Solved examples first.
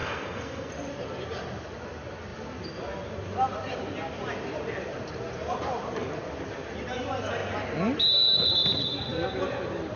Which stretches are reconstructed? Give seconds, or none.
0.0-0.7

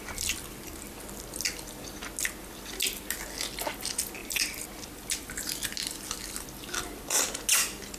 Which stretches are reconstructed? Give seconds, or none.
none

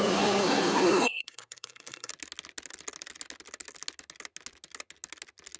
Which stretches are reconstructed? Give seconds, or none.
0.0-2.1